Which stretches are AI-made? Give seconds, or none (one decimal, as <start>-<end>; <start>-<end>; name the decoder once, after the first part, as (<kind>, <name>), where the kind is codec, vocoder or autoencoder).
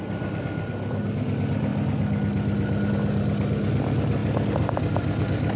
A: none